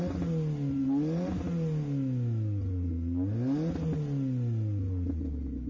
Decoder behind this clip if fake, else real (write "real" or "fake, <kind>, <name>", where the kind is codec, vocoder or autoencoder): real